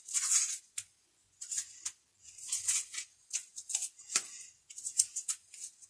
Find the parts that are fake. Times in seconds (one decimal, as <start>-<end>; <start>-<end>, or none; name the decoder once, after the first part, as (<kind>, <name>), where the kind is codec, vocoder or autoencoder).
0.0-1.7 (vocoder, Vocos); 2.2-5.9